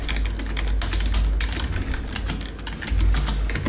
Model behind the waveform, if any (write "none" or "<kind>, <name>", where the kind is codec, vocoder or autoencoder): none